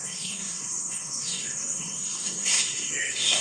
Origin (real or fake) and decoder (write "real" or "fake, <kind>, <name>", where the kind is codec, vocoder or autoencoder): fake, codec, SNAC